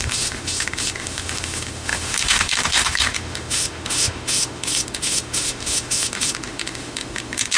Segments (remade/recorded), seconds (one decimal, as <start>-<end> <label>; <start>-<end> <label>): 0.0-7.6 remade